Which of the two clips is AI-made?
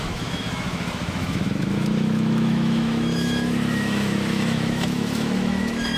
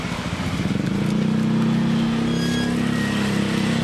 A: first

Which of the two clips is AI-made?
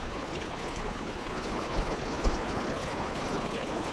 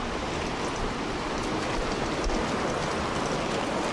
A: first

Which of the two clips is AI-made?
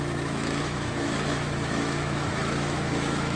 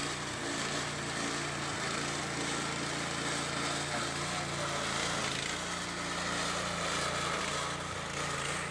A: first